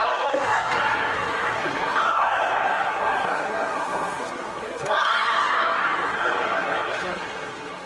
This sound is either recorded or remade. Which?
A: remade